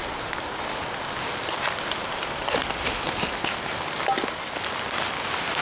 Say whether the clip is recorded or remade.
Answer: recorded